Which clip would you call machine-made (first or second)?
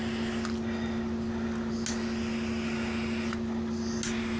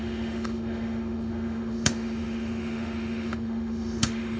second